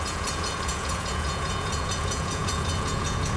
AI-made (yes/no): yes